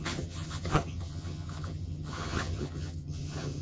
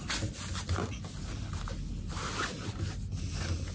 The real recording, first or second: second